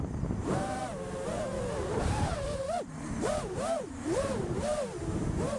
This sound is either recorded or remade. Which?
remade